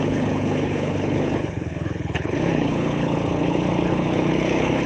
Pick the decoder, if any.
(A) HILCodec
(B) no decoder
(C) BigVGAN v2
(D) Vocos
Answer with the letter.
A